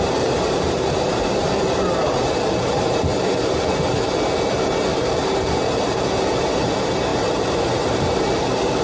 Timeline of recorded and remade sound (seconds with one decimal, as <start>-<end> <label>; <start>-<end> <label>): 0.0-3.1 remade; 3.1-4.8 recorded; 4.8-8.8 remade